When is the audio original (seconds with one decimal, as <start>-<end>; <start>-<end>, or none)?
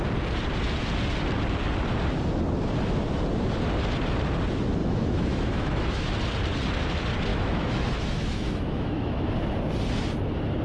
0.0-4.8; 6.1-7.3; 9.3-10.6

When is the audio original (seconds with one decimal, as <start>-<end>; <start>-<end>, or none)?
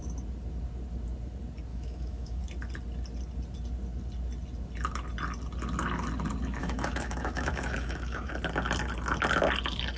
0.0-1.7; 2.4-6.6; 8.3-10.0